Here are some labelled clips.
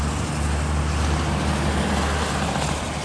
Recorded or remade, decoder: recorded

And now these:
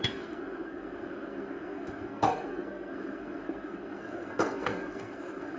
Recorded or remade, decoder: remade, codec, SNAC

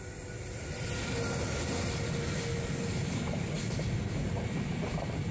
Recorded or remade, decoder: recorded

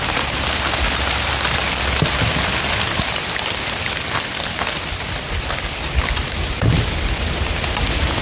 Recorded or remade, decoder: recorded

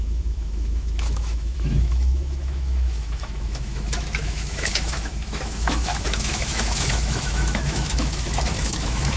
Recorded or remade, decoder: remade, autoencoder, DAC-VAE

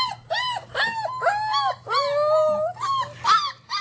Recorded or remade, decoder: recorded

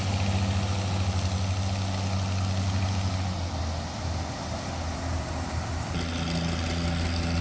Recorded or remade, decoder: recorded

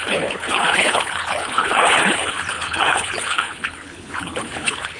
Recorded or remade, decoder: remade, codec, HILCodec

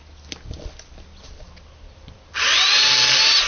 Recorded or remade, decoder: recorded